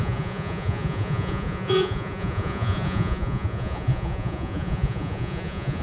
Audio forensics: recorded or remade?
remade